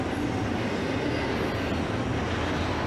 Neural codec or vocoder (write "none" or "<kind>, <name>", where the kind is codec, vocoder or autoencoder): none